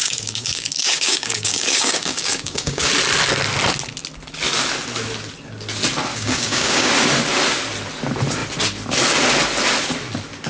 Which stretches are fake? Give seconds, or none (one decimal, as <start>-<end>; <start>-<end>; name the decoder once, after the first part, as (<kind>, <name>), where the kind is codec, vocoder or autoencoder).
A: 0.0-2.9 (codec, DAC); 6.1-6.9